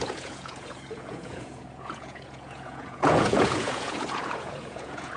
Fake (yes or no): yes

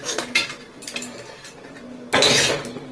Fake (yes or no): no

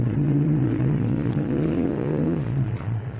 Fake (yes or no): yes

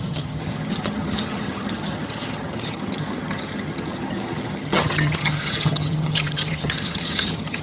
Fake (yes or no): yes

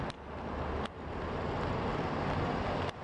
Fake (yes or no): no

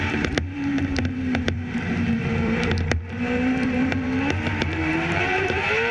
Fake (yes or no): yes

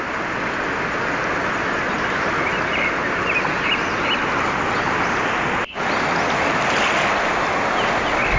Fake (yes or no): no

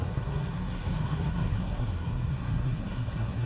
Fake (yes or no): yes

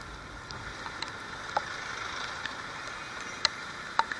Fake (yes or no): no